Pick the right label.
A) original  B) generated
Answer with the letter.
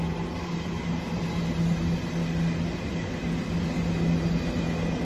A